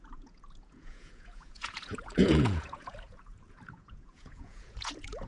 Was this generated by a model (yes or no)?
yes